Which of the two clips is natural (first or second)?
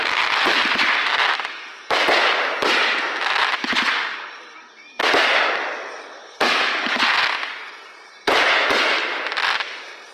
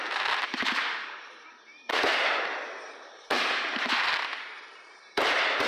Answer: first